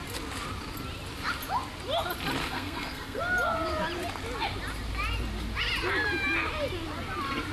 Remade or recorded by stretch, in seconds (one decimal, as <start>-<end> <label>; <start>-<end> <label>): 0.0-2.4 recorded; 2.4-3.2 remade; 3.2-7.5 recorded